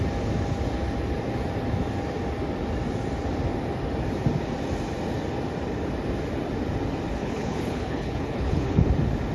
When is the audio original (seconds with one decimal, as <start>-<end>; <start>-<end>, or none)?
0.0-7.2; 8.9-9.3